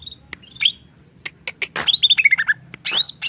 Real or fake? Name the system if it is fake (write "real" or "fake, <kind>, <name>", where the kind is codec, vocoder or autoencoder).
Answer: real